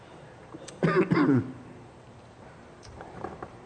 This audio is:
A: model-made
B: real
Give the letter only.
A